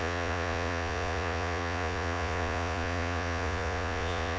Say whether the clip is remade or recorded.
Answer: remade